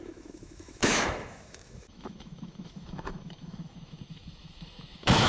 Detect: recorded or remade remade